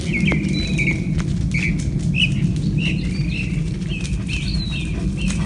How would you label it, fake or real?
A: real